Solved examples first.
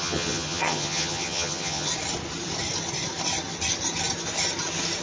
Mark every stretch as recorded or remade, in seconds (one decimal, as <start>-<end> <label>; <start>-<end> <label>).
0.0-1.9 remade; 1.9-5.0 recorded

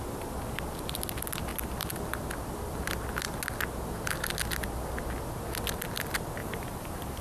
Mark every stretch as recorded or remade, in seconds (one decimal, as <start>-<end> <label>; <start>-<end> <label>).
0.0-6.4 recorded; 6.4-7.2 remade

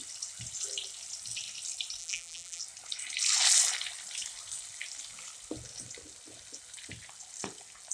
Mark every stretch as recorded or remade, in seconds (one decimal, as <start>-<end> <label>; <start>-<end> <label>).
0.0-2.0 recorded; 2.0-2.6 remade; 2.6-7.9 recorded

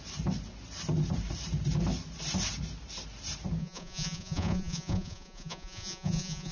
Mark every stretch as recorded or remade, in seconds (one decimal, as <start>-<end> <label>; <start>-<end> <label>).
0.0-3.6 recorded; 3.6-6.5 remade